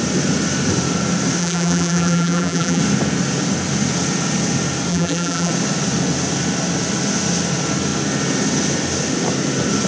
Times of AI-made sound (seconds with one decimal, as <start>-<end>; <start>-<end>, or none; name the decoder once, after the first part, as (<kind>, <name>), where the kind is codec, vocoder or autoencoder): 1.4-2.8 (vocoder, BigVGAN v2); 4.9-5.5